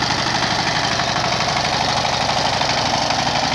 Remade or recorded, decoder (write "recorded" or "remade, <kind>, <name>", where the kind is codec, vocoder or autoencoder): recorded